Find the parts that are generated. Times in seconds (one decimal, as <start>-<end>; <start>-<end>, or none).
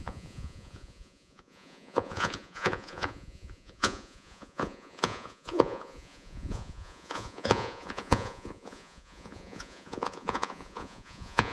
0.0-11.5